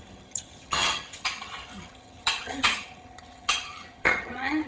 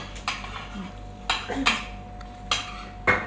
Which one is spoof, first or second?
first